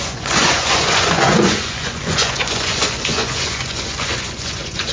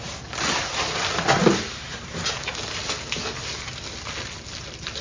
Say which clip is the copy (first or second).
first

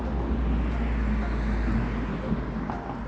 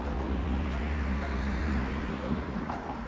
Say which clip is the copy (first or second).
second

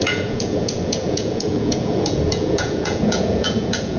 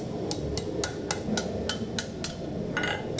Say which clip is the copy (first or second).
first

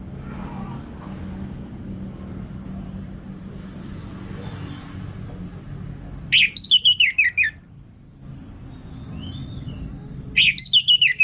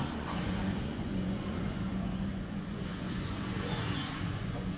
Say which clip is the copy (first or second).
second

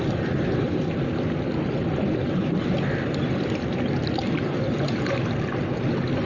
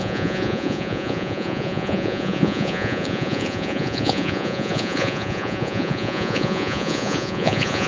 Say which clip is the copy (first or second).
second